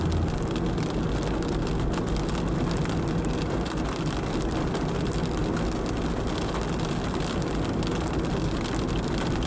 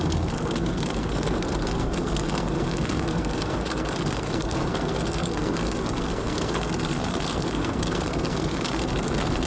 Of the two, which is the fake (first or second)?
second